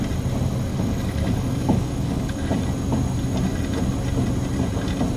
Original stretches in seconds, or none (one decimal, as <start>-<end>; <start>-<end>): 0.0-0.7; 2.5-5.2